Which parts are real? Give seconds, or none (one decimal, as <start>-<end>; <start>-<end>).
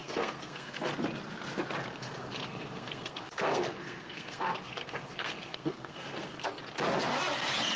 0.9-1.9; 6.6-7.8